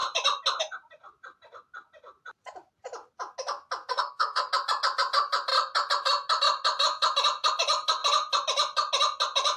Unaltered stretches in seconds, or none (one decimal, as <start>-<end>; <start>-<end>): 0.0-3.9; 4.5-9.6